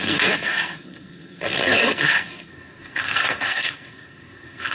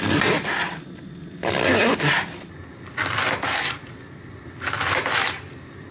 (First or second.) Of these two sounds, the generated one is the first